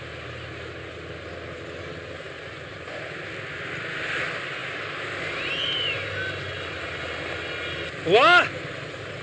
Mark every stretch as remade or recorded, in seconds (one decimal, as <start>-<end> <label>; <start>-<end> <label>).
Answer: 0.0-9.2 recorded